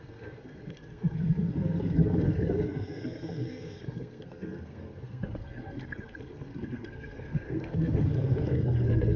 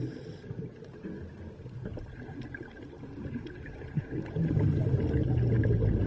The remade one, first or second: first